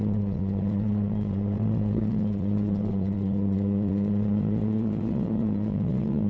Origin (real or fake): fake